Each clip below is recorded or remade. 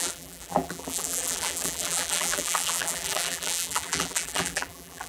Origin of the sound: remade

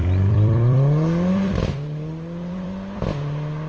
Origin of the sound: remade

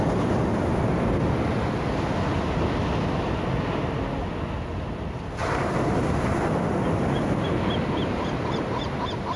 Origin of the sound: recorded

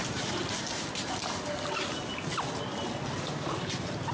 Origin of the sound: recorded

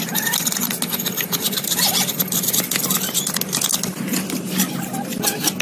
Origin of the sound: recorded